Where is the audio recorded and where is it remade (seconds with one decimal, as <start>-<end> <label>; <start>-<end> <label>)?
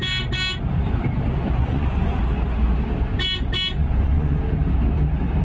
0.0-1.6 recorded; 1.6-2.2 remade; 2.2-3.8 recorded; 3.8-4.4 remade; 4.4-5.4 recorded